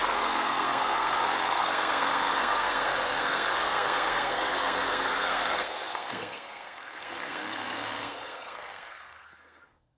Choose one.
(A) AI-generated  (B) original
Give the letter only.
A